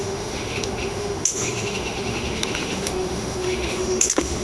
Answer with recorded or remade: remade